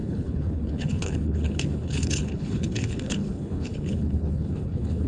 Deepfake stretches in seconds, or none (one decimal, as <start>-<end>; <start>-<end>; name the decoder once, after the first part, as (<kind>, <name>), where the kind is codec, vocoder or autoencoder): 0.0-5.1 (codec, HILCodec)